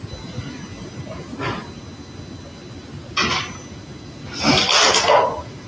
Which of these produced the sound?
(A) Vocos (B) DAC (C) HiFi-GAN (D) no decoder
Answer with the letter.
D